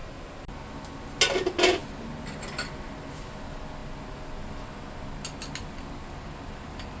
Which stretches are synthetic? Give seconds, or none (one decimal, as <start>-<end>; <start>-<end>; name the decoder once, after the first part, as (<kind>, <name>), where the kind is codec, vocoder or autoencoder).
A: none